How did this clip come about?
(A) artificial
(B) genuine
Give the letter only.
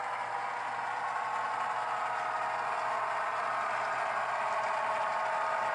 B